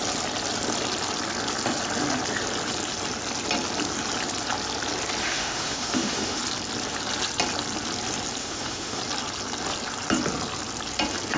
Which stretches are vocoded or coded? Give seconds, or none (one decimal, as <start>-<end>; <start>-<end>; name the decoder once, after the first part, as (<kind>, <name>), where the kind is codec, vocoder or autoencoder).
5.2-6.4 (autoencoder, DAC-VAE); 8.4-9.0